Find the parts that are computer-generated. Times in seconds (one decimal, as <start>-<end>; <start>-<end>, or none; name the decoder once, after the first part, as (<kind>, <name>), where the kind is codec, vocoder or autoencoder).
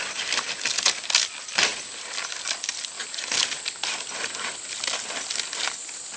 none